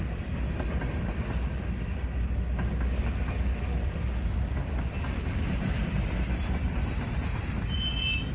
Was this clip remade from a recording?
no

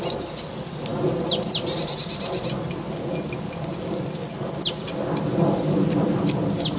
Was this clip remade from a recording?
no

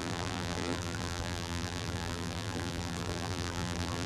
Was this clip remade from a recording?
yes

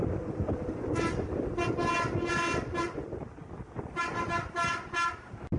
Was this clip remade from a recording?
no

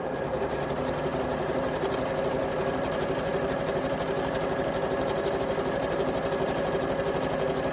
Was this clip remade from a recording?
no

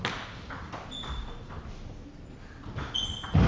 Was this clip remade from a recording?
no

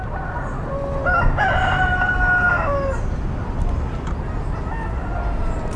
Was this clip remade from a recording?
no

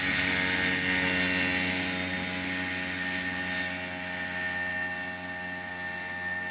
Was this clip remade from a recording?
no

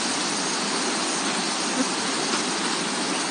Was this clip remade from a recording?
no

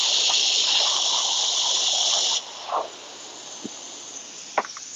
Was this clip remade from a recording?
no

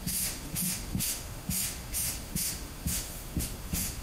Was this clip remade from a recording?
yes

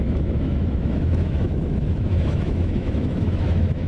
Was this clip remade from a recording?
yes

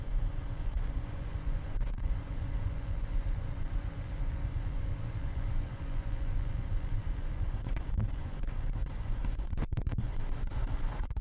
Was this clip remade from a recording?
yes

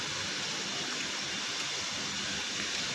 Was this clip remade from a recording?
no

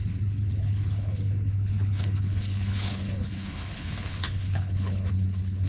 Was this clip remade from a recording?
yes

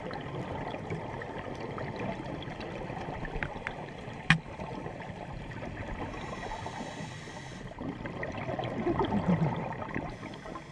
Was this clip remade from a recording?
no